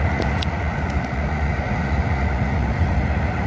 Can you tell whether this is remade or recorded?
remade